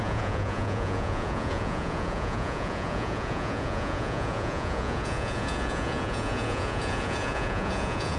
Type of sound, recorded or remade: remade